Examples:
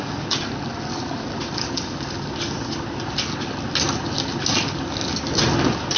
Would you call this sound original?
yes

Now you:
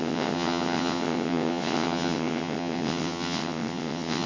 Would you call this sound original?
no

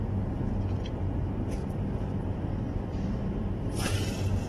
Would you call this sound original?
yes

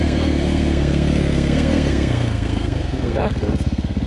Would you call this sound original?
no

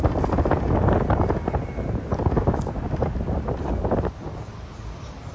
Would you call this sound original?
yes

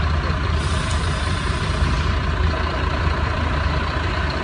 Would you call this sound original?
no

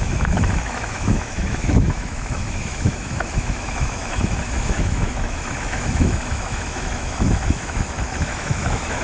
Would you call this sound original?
no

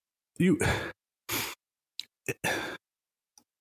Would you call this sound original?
yes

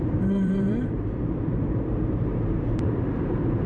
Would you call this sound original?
no